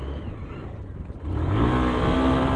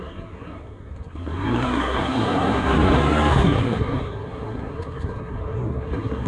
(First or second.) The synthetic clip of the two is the second